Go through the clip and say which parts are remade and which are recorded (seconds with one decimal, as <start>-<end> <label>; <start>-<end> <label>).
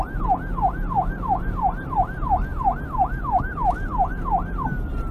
0.0-5.1 recorded